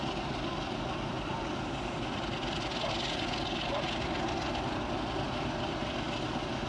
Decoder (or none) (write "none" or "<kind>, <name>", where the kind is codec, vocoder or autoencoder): none